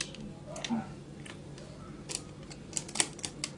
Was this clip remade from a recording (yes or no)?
no